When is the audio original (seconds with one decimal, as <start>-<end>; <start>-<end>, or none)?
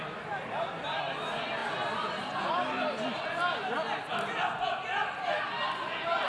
0.0-6.3